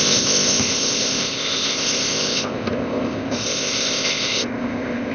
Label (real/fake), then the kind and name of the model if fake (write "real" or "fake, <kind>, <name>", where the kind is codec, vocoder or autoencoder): fake, codec, ZipCodec